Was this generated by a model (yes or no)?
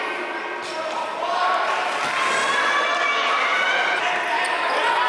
no